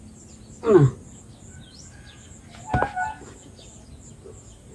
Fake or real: real